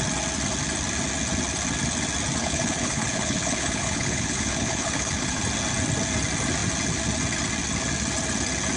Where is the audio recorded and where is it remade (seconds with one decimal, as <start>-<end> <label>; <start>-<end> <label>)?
0.0-2.4 recorded; 2.4-5.4 remade; 5.4-8.8 recorded

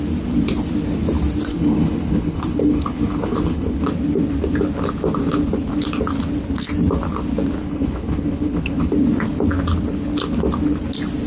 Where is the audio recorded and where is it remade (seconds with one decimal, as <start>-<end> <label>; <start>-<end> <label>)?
0.0-1.5 recorded; 1.5-3.8 remade; 3.8-7.6 recorded; 7.6-8.9 remade; 8.9-11.3 recorded

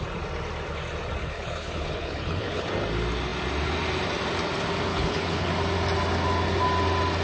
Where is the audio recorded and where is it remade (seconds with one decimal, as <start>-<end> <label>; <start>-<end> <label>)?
0.0-1.2 recorded; 1.2-2.7 remade; 2.7-4.9 recorded; 4.9-5.5 remade; 5.5-7.2 recorded

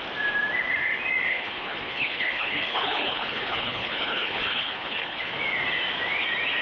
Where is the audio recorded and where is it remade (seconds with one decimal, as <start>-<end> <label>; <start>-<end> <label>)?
0.0-1.3 recorded; 1.3-5.3 remade; 5.3-6.6 recorded